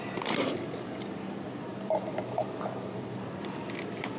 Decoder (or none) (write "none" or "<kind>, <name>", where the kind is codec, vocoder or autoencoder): vocoder, BigVGAN v2